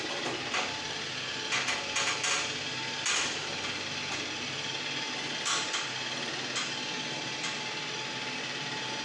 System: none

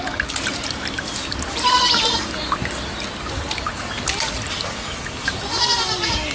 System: none